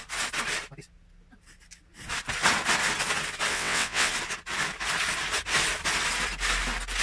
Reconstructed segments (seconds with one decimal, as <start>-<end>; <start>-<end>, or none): 3.5-4.1